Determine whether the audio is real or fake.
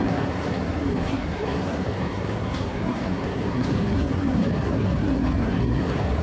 fake